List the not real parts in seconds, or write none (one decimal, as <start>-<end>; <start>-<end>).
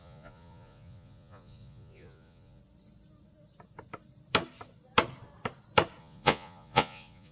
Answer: 0.0-2.6; 6.0-7.3